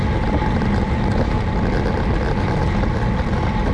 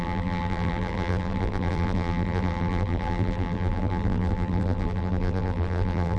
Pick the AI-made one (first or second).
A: second